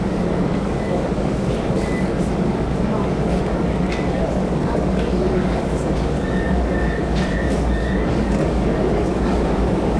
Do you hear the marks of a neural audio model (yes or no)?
yes